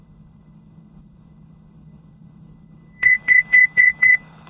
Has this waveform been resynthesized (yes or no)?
yes